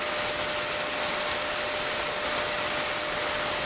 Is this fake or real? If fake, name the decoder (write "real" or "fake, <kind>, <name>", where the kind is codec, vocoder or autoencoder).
real